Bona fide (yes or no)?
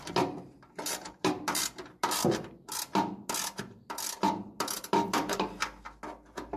yes